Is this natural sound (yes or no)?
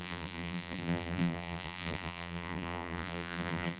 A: no